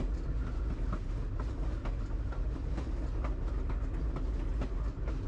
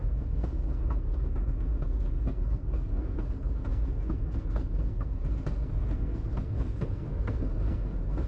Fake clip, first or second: second